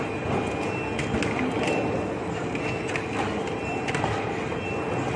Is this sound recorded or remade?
recorded